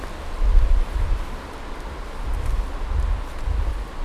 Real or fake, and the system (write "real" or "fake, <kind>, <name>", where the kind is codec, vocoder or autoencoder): real